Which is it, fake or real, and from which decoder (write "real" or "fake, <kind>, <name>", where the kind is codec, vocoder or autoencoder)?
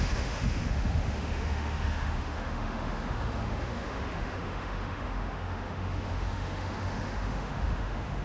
fake, autoencoder, DAC-VAE